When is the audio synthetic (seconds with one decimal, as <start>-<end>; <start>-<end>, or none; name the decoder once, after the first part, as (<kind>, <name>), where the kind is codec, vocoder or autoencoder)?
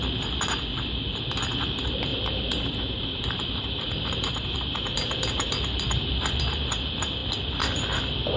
2.1-6.4 (vocoder, BigVGAN v2)